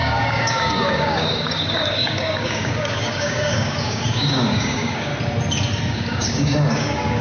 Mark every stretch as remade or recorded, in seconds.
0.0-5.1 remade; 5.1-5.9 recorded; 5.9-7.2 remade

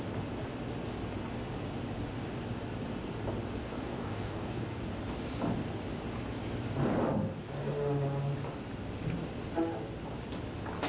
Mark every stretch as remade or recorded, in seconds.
0.0-3.6 recorded; 3.6-4.8 remade; 4.8-10.9 recorded

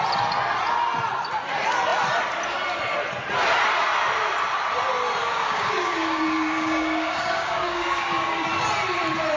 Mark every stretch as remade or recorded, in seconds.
0.0-5.2 recorded; 5.2-8.5 remade; 8.5-9.4 recorded

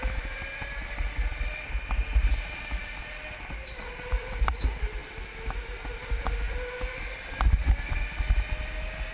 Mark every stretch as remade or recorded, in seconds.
0.0-9.1 recorded

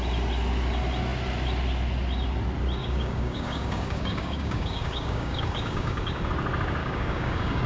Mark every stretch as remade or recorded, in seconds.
0.0-2.8 recorded; 2.8-6.3 remade; 6.3-6.8 recorded; 6.8-7.7 remade

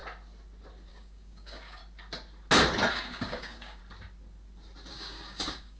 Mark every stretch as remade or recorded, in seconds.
0.0-0.9 recorded; 0.9-1.8 remade; 1.8-2.9 recorded; 2.9-3.8 remade; 3.8-4.9 recorded; 4.9-5.8 remade

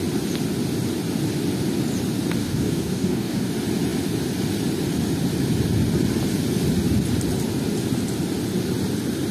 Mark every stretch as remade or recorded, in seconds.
0.0-2.4 recorded; 2.4-3.5 remade; 3.5-9.3 recorded